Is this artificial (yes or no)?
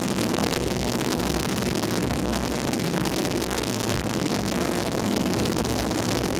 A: yes